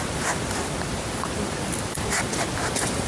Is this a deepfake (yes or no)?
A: no